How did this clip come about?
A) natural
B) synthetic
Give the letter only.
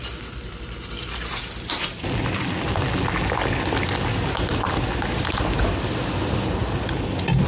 A